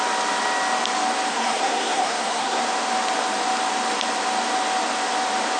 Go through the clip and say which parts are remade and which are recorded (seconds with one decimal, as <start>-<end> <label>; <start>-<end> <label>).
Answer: 0.0-1.3 recorded; 1.3-2.6 remade; 2.6-5.6 recorded